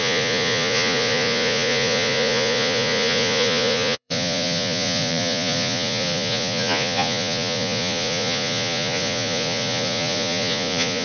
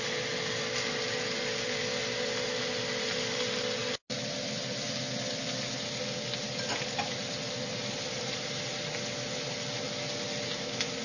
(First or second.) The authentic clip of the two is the second